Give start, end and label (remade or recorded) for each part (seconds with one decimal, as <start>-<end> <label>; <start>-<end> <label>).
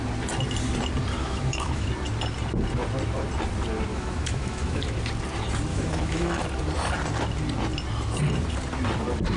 0.0-1.2 recorded; 1.2-1.9 remade; 1.9-3.9 recorded; 3.9-4.8 remade; 4.8-5.7 recorded; 5.7-6.4 remade; 6.4-9.4 recorded